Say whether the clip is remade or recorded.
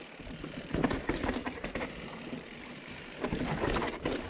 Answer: remade